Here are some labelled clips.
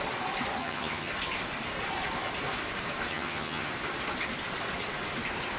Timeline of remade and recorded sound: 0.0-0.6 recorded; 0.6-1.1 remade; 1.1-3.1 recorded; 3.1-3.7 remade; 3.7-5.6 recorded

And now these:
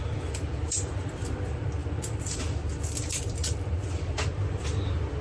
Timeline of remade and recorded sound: 0.0-5.2 remade

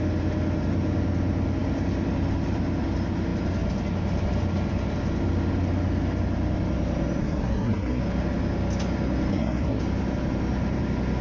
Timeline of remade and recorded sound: 0.0-7.2 recorded; 7.2-8.0 remade; 8.0-9.3 recorded; 9.3-9.8 remade; 9.8-11.2 recorded

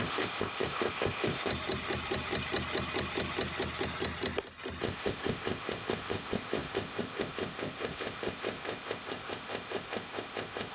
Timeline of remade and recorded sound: 0.0-1.5 remade; 1.5-4.8 recorded; 4.8-10.7 remade

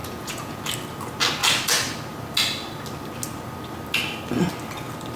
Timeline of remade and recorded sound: 0.0-0.6 remade; 0.6-5.2 recorded

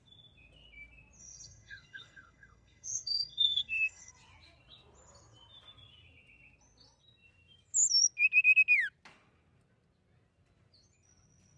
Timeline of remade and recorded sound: 0.0-1.2 recorded; 1.2-4.1 remade; 4.1-11.6 recorded

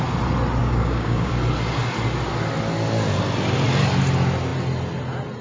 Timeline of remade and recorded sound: 0.0-0.6 recorded; 0.6-1.3 remade; 1.3-5.4 recorded

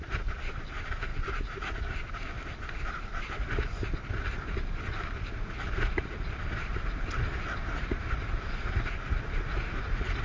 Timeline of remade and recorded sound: 0.0-10.2 recorded